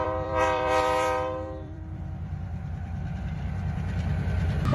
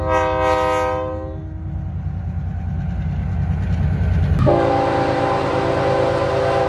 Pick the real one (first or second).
second